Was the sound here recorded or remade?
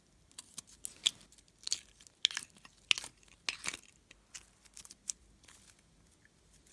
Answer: recorded